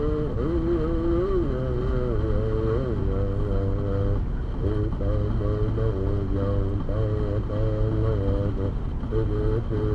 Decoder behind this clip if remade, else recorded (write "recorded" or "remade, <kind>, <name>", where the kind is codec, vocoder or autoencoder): recorded